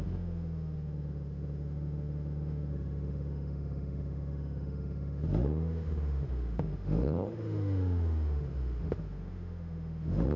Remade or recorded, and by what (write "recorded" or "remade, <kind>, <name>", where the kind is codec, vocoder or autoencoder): remade, autoencoder, DAC-VAE